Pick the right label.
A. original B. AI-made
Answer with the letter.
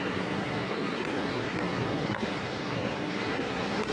B